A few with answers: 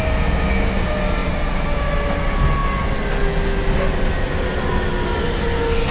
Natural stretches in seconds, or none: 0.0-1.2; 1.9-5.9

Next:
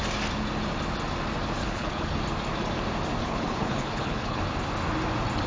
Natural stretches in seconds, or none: 0.0-1.6; 2.2-3.2; 4.4-5.5

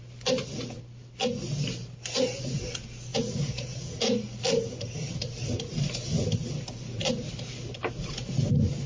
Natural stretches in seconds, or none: 0.0-3.1; 4.0-8.9

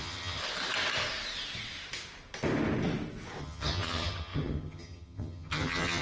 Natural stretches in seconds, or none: 0.4-3.4

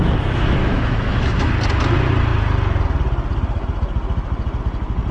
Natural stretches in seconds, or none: 0.0-0.6; 1.5-5.1

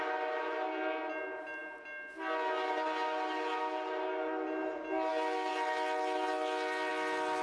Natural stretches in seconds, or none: 0.0-7.4